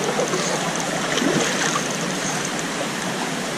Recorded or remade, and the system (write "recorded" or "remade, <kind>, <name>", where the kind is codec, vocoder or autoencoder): remade, vocoder, BigVGAN v2